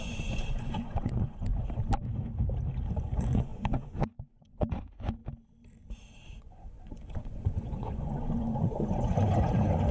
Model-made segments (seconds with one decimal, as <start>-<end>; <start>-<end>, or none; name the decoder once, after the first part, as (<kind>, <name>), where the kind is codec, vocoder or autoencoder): 0.0-1.5 (vocoder, Vocos); 3.0-5.2; 6.4-9.9